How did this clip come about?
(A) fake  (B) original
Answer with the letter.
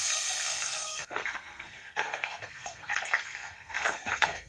A